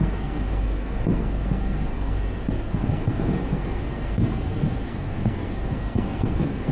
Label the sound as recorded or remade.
remade